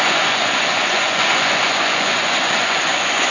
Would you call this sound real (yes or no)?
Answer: no